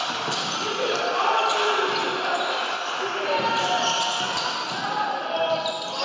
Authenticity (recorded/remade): recorded